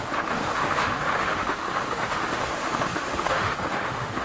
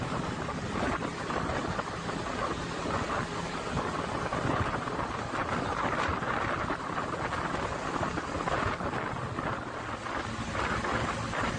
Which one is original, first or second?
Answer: second